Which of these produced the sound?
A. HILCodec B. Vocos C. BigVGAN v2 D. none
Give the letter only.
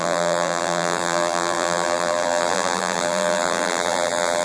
C